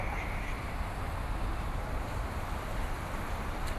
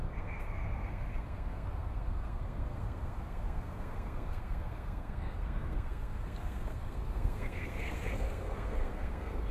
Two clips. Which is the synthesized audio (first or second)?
second